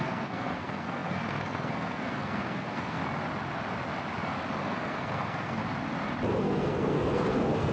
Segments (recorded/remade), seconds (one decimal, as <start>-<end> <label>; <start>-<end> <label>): 0.0-3.0 remade; 3.0-4.6 recorded; 4.6-5.6 remade; 5.6-6.3 recorded; 6.3-7.7 remade